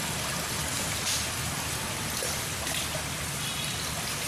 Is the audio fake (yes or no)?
no